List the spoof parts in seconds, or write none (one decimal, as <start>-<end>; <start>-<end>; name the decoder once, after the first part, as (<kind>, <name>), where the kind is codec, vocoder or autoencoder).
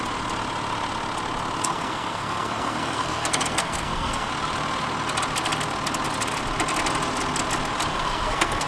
1.6-4.3 (codec, SNAC); 7.9-8.7